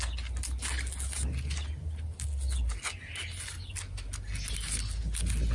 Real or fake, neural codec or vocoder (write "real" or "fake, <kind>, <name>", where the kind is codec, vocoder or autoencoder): real